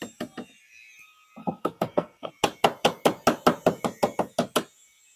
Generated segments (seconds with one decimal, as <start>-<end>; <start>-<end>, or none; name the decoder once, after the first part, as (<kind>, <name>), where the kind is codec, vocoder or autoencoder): 1.4-2.3 (codec, SNAC)